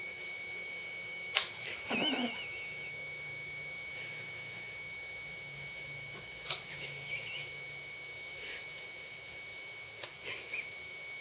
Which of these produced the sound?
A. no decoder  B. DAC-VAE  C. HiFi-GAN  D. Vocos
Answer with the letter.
B